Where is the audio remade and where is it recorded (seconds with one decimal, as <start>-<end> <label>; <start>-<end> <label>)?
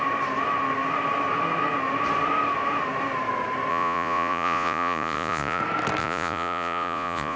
0.0-3.7 recorded; 3.7-5.6 remade; 5.6-6.0 recorded; 6.0-7.4 remade